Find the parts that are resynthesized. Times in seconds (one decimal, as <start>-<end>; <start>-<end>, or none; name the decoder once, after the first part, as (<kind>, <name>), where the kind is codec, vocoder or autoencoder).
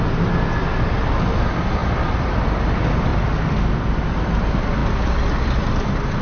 none